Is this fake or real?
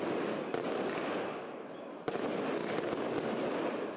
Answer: real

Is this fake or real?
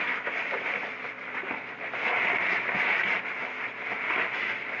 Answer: real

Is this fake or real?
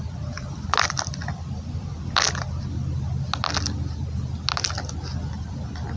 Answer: real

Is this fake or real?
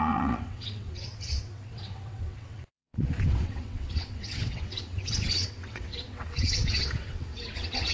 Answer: fake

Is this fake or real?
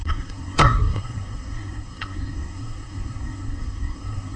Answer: fake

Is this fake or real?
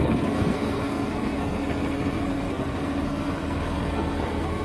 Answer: fake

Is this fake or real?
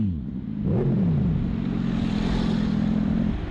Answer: real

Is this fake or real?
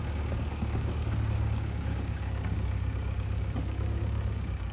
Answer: fake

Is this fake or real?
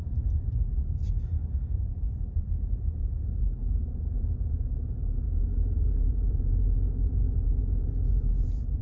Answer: fake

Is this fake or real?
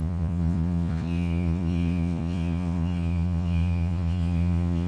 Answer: fake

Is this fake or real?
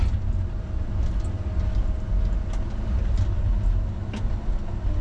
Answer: real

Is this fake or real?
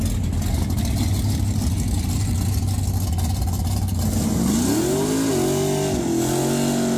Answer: real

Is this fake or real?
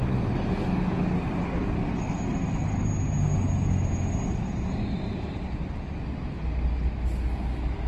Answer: real